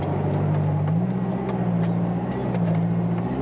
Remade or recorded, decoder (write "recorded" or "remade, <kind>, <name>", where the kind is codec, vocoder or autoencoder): recorded